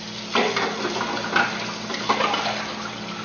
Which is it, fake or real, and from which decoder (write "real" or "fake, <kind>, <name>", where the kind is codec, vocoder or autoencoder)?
real